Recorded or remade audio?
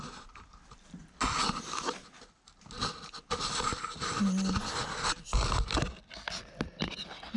recorded